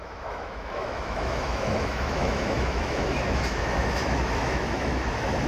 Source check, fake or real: fake